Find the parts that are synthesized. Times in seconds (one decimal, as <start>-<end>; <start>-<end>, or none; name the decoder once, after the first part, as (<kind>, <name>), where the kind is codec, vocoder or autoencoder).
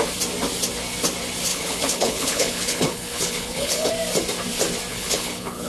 1.5-3.9 (codec, HILCodec); 4.9-5.7